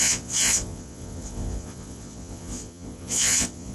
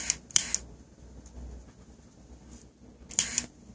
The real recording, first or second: second